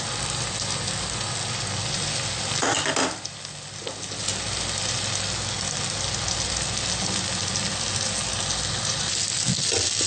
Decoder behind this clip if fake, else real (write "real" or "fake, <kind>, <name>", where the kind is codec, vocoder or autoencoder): real